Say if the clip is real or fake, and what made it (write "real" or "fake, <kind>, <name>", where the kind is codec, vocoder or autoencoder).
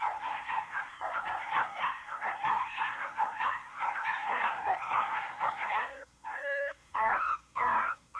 fake, codec, SNAC